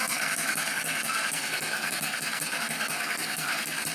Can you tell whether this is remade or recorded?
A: remade